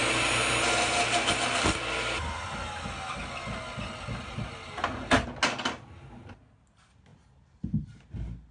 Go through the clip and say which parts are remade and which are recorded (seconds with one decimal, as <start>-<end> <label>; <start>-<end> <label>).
0.0-8.5 recorded